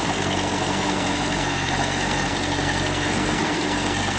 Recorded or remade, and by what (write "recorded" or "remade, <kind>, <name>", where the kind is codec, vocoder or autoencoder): remade, codec, SNAC